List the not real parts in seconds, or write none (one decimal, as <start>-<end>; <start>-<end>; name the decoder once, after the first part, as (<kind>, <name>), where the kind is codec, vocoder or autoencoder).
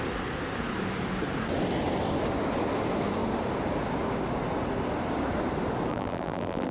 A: 5.9-6.7 (vocoder, BigVGAN v2)